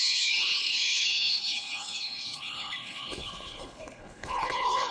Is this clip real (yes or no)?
no